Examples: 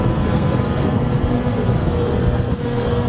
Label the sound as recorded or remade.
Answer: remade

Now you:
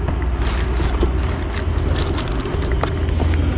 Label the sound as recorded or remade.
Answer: recorded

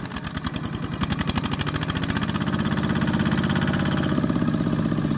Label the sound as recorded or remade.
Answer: recorded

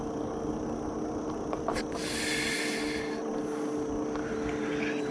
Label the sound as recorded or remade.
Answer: recorded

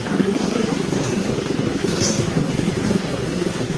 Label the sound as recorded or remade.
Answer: remade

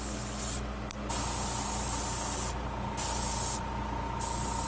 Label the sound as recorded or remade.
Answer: recorded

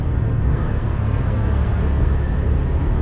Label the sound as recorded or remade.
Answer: remade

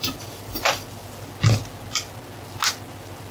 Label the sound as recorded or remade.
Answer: recorded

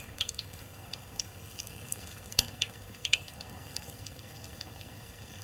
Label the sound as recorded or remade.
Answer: remade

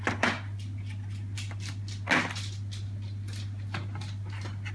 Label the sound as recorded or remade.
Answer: recorded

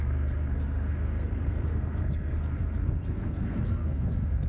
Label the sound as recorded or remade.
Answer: remade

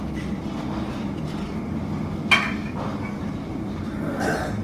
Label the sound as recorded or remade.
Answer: recorded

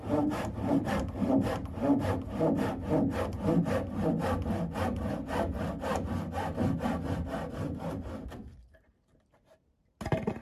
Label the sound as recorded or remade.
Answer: recorded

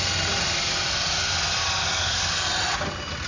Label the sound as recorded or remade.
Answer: recorded